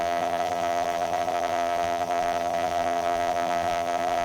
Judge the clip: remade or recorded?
remade